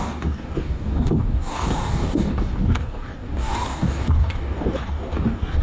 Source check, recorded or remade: remade